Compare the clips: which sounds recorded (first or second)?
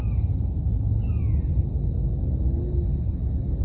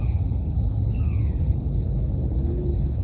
first